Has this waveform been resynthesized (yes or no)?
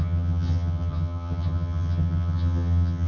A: yes